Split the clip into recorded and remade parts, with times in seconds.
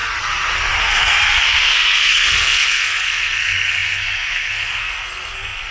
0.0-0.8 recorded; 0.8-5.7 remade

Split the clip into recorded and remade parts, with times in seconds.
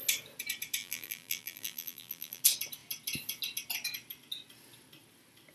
0.0-0.8 recorded; 0.8-2.4 remade; 2.4-5.5 recorded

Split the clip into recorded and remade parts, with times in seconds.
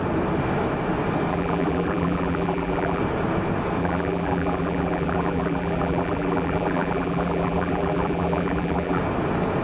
0.0-1.3 recorded; 1.3-3.0 remade; 3.0-3.8 recorded; 3.8-9.0 remade; 9.0-9.6 recorded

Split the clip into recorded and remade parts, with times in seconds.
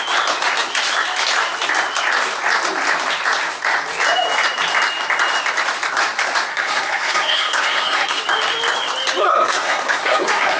0.0-6.5 recorded; 6.5-8.2 remade; 8.2-9.2 recorded; 9.2-10.6 remade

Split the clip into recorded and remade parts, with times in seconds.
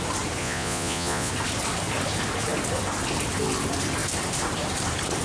0.0-0.4 recorded; 0.4-1.3 remade; 1.3-5.2 recorded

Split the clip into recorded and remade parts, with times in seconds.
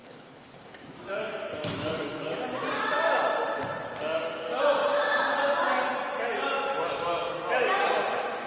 0.0-2.3 remade; 2.3-8.5 recorded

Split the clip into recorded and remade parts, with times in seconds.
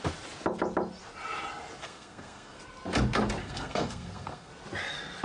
0.0-1.8 recorded; 1.8-2.6 remade; 2.6-3.4 recorded; 3.4-4.5 remade; 4.5-5.2 recorded